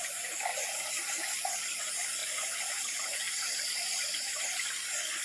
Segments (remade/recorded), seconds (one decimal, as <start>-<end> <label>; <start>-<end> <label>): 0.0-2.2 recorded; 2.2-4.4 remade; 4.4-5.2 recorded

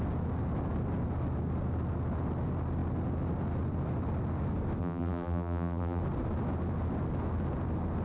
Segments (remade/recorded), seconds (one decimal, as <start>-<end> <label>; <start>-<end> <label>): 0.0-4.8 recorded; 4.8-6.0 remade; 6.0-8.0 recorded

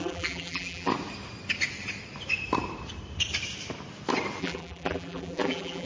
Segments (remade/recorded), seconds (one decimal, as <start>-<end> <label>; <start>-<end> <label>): 0.0-0.9 remade; 0.9-4.4 recorded; 4.4-5.9 remade

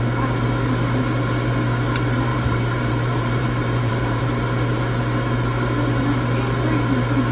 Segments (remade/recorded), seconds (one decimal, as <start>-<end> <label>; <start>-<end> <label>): 0.0-2.3 recorded; 2.3-4.2 remade; 4.2-7.3 recorded